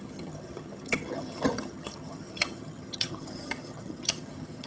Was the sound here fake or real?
fake